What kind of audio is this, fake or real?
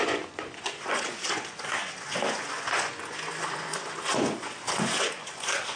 fake